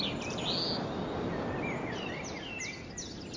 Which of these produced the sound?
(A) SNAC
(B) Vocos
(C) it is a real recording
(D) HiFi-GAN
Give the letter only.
C